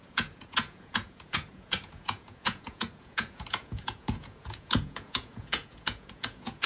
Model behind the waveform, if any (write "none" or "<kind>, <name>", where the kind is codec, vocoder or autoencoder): vocoder, Vocos